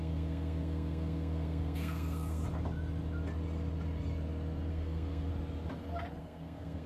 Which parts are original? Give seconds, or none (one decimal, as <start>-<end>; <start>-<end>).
2.4-4.7; 5.3-6.2